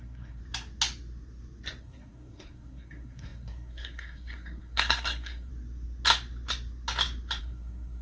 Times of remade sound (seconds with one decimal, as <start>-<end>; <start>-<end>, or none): 0.0-0.4; 1.8-5.5; 7.4-8.0